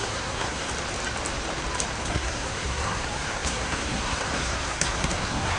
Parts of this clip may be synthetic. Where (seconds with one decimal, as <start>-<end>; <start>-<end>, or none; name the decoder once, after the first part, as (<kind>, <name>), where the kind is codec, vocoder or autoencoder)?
0.0-0.7 (codec, SNAC); 2.0-5.6

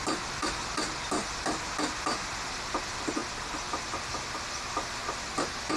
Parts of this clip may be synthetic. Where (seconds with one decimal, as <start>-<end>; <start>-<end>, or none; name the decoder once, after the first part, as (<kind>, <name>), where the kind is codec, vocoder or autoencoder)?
none

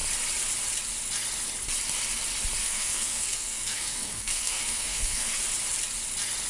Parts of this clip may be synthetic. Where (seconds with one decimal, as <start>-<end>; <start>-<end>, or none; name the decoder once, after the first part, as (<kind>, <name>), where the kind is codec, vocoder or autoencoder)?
2.6-5.4 (codec, SNAC)

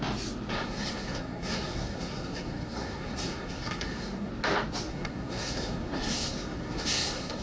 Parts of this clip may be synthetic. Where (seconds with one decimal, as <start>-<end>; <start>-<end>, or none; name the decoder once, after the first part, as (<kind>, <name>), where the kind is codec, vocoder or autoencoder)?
0.5-4.3 (codec, SNAC); 4.9-7.4